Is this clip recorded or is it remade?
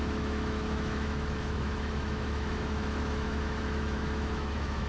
remade